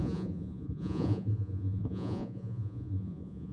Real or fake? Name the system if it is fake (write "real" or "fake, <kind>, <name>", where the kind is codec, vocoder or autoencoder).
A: fake, vocoder, Vocos